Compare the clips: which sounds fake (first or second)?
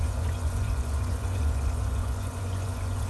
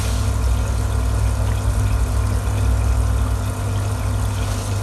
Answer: first